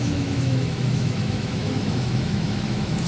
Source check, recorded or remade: remade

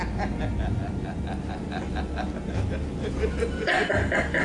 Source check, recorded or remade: recorded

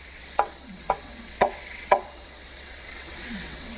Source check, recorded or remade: remade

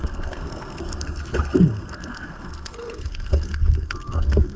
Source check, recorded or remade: remade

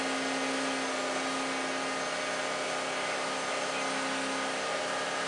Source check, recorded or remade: recorded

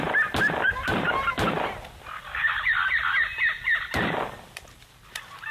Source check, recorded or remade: remade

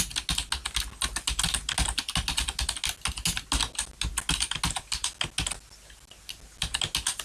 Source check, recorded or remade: recorded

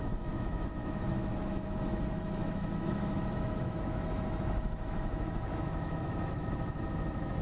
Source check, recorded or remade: remade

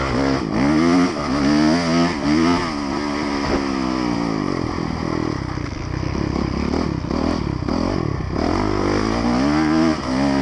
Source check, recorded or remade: recorded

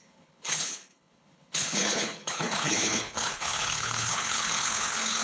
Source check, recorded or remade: remade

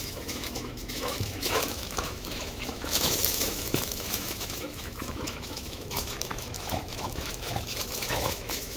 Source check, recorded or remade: remade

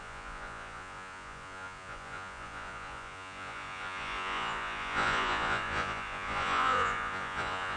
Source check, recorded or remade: remade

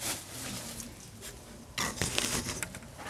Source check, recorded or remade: recorded